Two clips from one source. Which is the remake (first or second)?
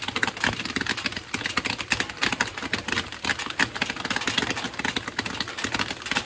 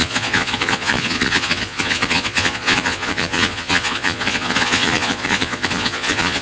second